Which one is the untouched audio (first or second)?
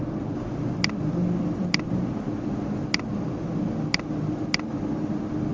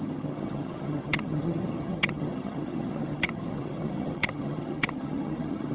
first